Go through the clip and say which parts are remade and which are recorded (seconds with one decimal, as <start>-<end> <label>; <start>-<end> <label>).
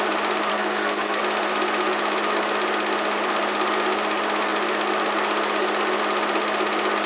0.0-0.5 recorded; 0.5-1.2 remade; 1.2-7.1 recorded